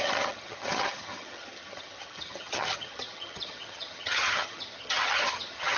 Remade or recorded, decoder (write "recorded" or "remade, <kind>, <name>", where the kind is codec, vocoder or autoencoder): remade, vocoder, HiFi-GAN